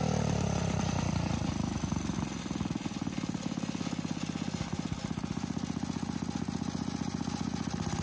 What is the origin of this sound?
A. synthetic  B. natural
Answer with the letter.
B